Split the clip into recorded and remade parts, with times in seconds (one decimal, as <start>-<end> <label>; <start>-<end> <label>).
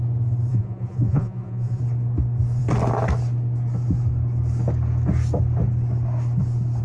0.0-0.5 recorded; 0.5-1.8 remade; 1.8-6.8 recorded